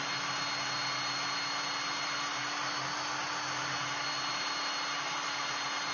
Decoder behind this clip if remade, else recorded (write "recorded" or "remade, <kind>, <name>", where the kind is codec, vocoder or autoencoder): recorded